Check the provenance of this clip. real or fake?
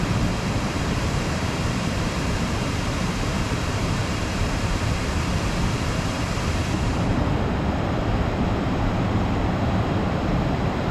fake